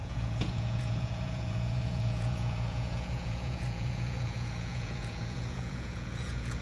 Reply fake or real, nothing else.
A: fake